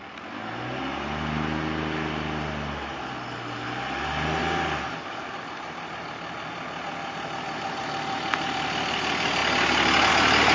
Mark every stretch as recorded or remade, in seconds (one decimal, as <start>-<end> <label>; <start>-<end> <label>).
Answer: 0.0-10.5 recorded